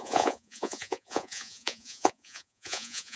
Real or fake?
fake